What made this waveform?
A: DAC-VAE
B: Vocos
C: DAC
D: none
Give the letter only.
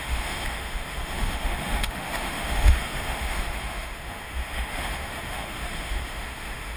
A